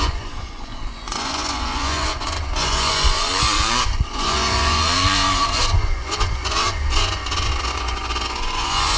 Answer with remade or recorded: remade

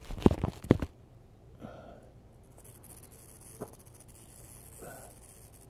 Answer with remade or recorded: recorded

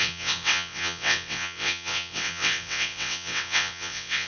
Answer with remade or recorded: remade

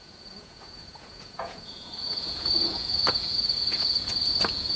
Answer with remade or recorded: remade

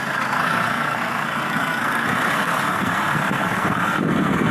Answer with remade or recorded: remade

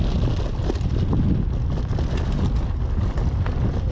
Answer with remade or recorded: recorded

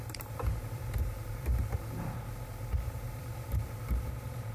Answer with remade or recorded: remade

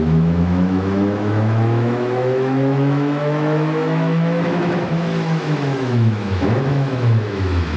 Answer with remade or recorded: remade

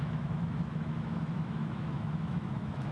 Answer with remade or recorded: remade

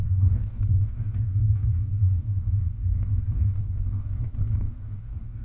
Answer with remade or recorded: remade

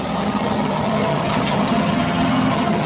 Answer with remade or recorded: remade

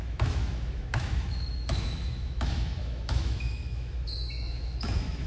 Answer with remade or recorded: remade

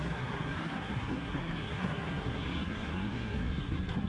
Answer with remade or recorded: remade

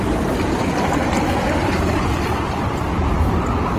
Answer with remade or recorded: remade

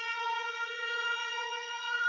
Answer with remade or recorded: remade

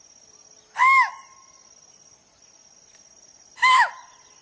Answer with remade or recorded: recorded